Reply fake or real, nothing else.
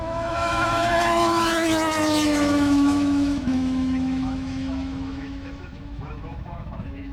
fake